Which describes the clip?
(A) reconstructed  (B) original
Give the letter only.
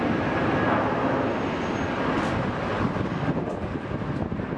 B